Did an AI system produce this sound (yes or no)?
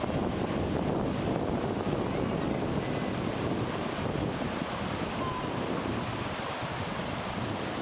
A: no